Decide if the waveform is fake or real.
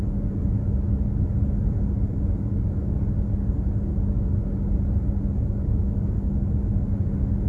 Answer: real